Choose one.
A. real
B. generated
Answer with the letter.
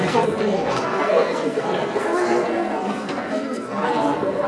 B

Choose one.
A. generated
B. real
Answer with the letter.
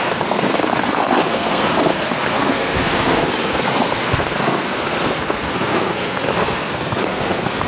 A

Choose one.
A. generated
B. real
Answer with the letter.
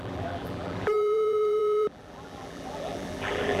A